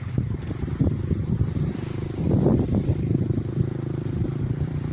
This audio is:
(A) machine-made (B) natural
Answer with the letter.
A